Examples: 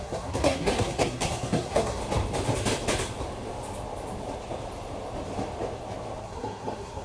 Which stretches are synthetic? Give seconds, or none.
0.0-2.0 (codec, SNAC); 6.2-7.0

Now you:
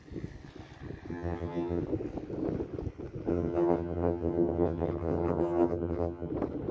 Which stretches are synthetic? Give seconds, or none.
1.1-1.8 (vocoder, HiFi-GAN); 3.3-6.3

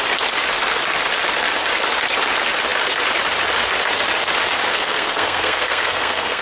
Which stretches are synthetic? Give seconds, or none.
4.7-6.4 (codec, SNAC)

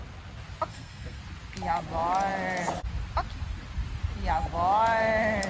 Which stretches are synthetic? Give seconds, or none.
0.7-1.2 (codec, SNAC)

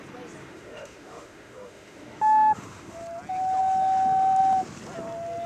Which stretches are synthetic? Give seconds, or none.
0.4-3.0 (autoencoder, DAC-VAE)

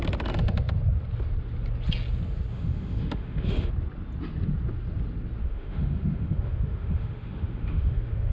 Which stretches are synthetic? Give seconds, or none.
2.5-3.7 (autoencoder, DAC-VAE); 5.4-8.3